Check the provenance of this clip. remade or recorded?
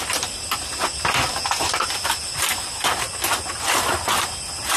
recorded